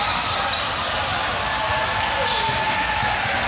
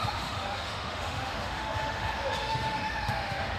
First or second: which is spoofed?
second